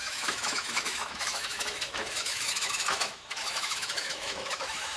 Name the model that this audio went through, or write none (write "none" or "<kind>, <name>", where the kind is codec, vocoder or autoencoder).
autoencoder, DAC-VAE